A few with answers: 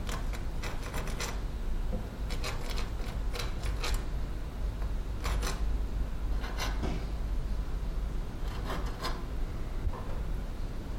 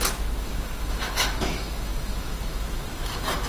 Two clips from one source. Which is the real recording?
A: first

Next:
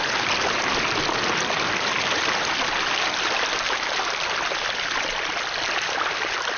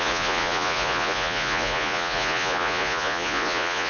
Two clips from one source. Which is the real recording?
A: first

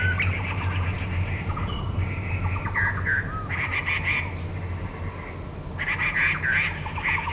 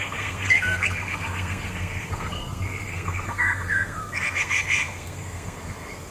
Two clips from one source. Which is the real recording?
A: first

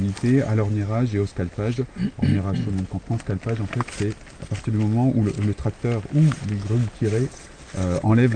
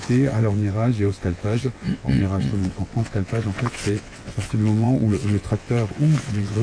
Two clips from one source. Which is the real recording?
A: first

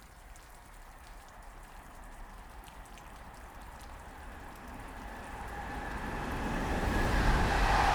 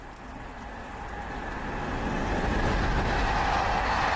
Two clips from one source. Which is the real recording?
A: second